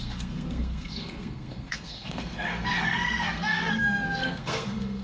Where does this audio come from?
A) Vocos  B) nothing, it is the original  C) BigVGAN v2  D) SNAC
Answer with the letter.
D